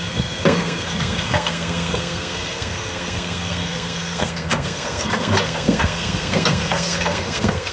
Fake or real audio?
fake